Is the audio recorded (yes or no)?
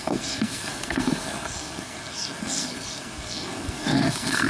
no